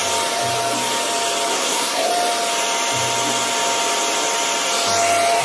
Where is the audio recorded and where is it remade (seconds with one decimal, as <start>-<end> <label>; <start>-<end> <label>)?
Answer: 0.0-1.5 recorded; 1.5-2.1 remade; 2.1-5.4 recorded